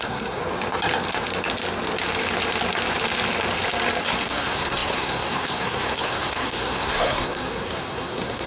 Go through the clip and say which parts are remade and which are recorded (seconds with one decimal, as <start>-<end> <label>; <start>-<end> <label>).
0.0-0.4 remade; 0.4-4.0 recorded; 4.0-8.5 remade